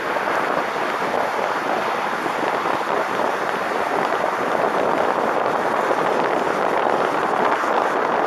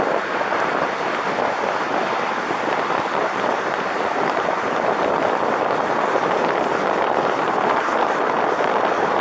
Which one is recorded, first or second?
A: first